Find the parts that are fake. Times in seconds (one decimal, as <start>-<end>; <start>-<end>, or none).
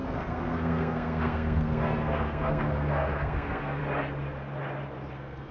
0.0-3.8; 5.1-5.5